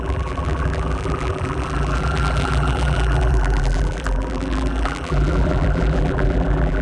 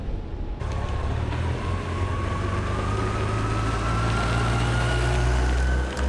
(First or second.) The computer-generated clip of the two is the first